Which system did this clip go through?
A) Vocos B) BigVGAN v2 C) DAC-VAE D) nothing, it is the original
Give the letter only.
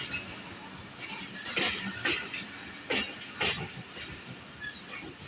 D